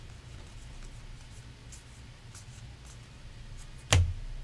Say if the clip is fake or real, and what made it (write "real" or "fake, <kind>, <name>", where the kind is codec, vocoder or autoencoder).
real